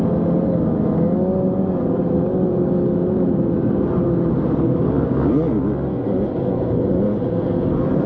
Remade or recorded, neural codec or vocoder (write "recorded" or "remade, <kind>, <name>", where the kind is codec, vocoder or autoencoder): recorded